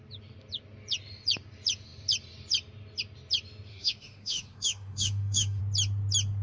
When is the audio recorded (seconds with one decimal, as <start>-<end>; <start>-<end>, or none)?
0.0-3.7; 5.6-6.4